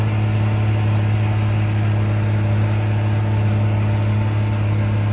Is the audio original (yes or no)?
yes